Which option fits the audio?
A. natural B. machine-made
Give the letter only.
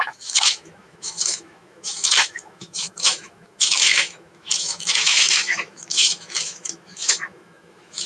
B